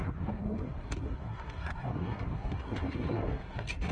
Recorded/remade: remade